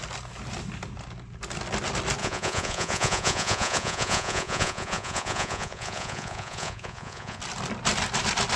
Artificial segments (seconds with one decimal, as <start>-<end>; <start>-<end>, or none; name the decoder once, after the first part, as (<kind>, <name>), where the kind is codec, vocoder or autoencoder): 2.2-7.4 (vocoder, Vocos)